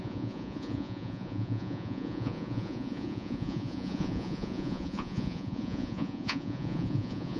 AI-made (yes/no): yes